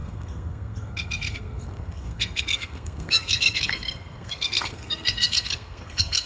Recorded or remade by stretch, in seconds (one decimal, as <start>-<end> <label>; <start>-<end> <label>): 0.0-6.3 remade